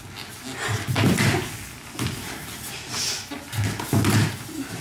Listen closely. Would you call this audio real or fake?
real